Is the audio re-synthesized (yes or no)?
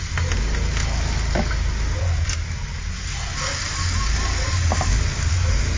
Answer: no